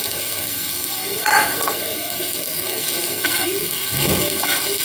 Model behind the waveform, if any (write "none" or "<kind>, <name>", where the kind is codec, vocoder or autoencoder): codec, SNAC